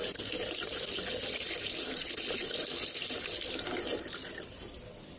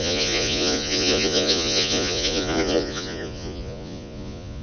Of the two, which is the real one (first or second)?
first